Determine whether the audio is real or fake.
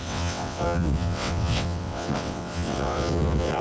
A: fake